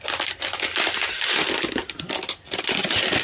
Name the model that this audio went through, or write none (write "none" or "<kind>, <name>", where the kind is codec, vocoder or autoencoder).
none